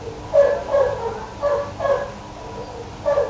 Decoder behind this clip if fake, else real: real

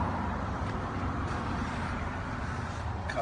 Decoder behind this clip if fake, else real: fake, vocoder, BigVGAN v2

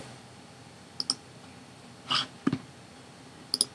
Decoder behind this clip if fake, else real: real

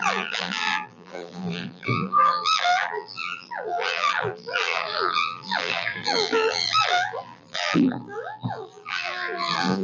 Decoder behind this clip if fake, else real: fake, vocoder, BigVGAN v2